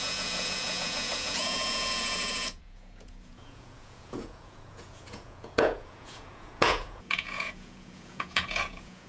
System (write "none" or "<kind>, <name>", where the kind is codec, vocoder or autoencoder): vocoder, Vocos